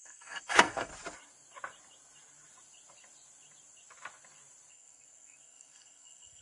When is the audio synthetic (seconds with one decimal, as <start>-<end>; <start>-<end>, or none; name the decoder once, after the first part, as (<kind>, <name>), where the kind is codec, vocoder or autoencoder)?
0.0-0.9 (codec, SNAC); 4.7-6.4